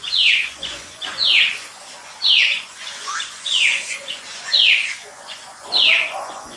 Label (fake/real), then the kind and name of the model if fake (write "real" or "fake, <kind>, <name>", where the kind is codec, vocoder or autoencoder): fake, vocoder, Vocos